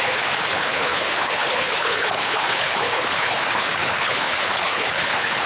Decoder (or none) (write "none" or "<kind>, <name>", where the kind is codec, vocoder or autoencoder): codec, HILCodec